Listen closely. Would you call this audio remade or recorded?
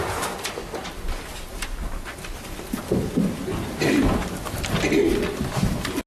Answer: recorded